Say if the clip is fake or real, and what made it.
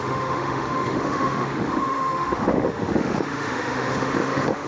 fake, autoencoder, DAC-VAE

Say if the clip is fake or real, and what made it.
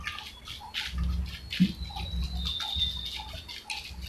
real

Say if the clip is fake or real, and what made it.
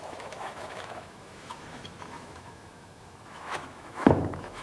fake, autoencoder, DAC-VAE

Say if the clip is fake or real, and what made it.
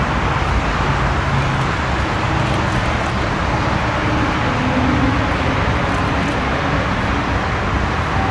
real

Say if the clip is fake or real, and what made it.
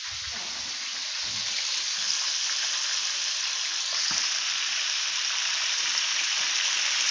real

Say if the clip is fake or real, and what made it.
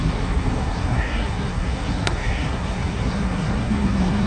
fake, codec, SNAC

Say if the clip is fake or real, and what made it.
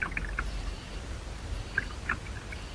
real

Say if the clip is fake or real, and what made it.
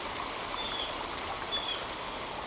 real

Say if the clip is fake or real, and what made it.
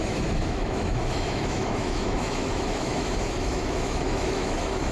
fake, autoencoder, DAC-VAE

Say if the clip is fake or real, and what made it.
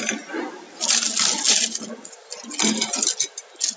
real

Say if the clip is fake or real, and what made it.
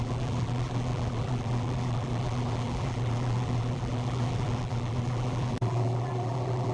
fake, vocoder, BigVGAN v2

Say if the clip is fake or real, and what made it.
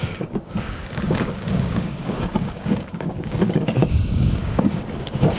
fake, codec, DAC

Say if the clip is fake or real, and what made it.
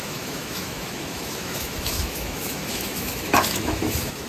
fake, autoencoder, DAC-VAE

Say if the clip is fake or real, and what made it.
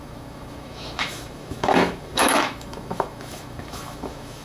fake, autoencoder, DAC-VAE